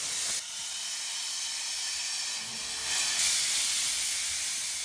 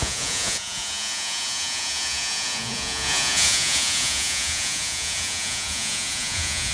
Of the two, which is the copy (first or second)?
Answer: second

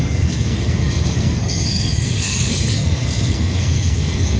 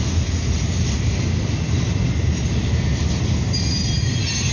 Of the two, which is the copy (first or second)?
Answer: first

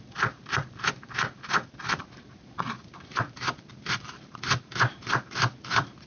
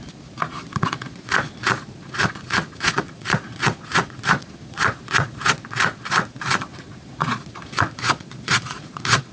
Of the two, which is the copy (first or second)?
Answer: second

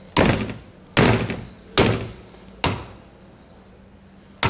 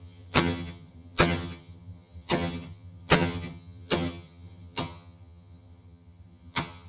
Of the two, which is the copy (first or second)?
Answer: second